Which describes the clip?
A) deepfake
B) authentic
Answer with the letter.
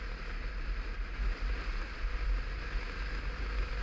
B